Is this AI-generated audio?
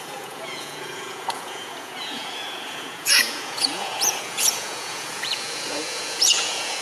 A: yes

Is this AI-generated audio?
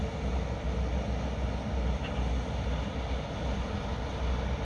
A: no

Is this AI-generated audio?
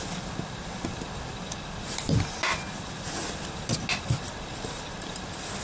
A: no